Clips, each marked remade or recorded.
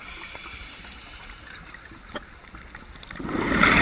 recorded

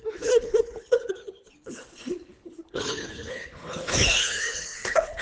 remade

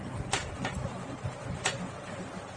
recorded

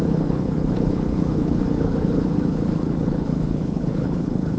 remade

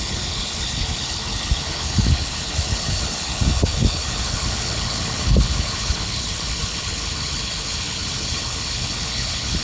remade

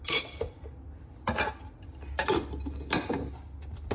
recorded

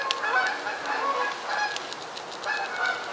recorded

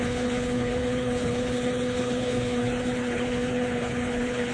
remade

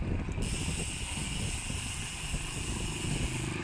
recorded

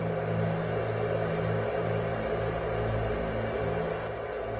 recorded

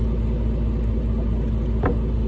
recorded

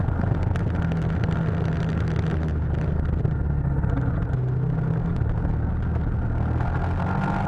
recorded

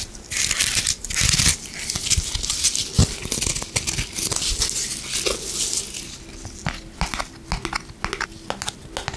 recorded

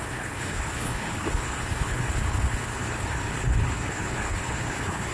remade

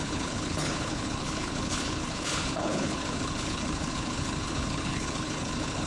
remade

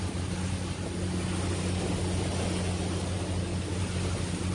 recorded